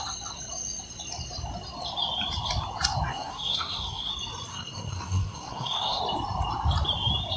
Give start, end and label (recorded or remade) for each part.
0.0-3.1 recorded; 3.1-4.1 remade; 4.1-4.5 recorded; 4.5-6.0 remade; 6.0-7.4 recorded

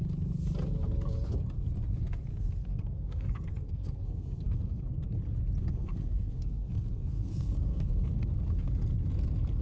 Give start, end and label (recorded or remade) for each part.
0.0-2.3 recorded; 2.3-4.8 remade; 4.8-5.6 recorded; 5.6-8.3 remade; 8.3-9.6 recorded

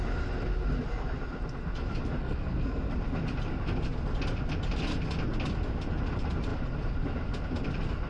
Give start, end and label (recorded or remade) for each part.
0.0-2.2 recorded; 2.2-2.9 remade; 2.9-8.1 recorded

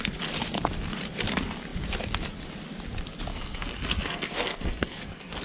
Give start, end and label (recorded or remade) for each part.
0.0-3.3 recorded; 3.3-5.4 remade

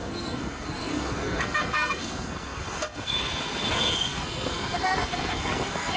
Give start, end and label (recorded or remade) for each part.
0.0-6.0 remade